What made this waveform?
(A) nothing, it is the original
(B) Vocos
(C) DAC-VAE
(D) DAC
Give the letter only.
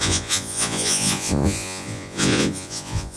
B